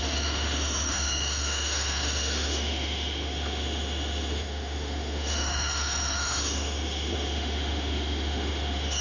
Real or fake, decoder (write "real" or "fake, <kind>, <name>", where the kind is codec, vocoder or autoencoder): fake, autoencoder, DAC-VAE